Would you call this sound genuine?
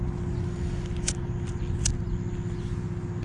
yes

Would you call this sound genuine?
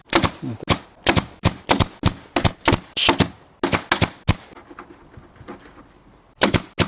yes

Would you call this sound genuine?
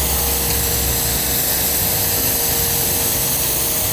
yes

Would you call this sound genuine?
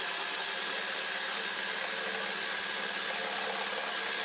yes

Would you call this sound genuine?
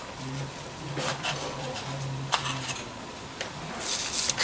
yes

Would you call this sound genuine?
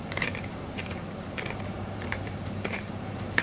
no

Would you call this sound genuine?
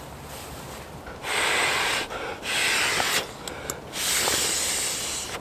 yes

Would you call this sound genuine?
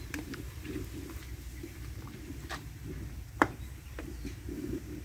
no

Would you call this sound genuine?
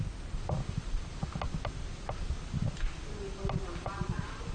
yes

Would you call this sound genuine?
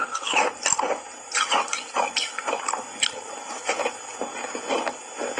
yes